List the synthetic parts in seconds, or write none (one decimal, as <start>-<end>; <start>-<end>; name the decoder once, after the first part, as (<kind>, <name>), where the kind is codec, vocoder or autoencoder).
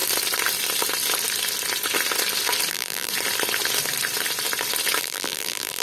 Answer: 2.7-3.1 (vocoder, BigVGAN v2); 5.0-5.8